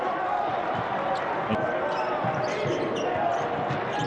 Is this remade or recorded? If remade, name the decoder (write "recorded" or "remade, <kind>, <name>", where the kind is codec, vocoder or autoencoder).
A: recorded